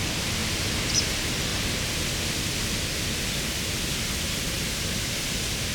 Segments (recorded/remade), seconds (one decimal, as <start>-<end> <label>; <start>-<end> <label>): 0.0-0.4 remade; 0.4-0.9 recorded; 0.9-1.5 remade; 1.5-4.9 recorded; 4.9-5.7 remade

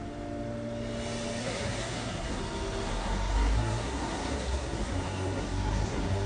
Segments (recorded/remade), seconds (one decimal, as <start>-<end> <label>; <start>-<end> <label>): 0.0-1.4 recorded; 1.4-2.4 remade; 2.4-2.9 recorded; 2.9-6.3 remade

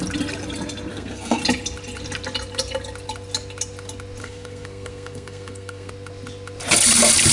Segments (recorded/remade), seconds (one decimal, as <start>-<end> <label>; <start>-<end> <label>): 0.0-0.9 recorded; 0.9-1.4 remade; 1.4-4.2 recorded; 4.2-5.9 remade; 5.9-7.3 recorded

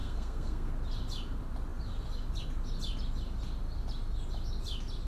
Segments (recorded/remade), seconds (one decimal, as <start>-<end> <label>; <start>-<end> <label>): 0.0-0.7 remade; 0.7-5.1 recorded

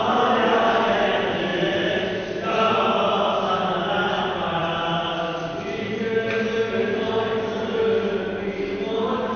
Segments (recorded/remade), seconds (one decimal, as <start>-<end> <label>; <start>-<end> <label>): 0.0-9.4 recorded

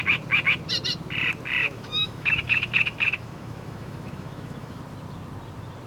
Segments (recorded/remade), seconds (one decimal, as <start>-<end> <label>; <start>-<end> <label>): 0.0-1.6 recorded; 1.6-4.8 remade; 4.8-5.9 recorded

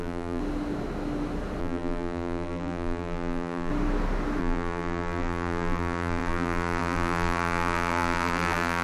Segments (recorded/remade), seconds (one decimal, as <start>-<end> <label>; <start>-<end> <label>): 0.0-0.4 remade; 0.4-1.6 recorded; 1.6-3.7 remade; 3.7-4.4 recorded; 4.4-8.8 remade